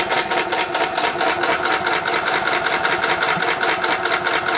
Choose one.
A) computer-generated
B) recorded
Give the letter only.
B